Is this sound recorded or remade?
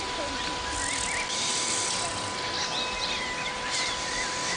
recorded